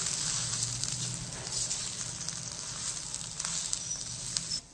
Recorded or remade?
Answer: recorded